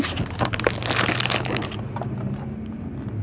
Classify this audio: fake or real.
real